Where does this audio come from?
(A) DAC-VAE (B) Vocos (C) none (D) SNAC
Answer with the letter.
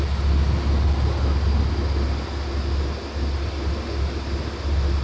C